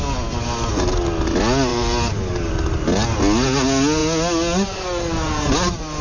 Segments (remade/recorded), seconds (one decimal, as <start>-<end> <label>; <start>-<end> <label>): 0.0-1.7 recorded; 1.7-2.5 remade; 2.5-6.0 recorded